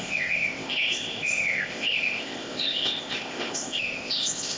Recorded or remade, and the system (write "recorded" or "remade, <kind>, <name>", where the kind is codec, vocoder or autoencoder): remade, codec, ZipCodec